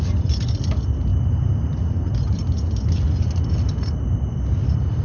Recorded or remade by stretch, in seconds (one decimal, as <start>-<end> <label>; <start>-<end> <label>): 0.0-5.0 recorded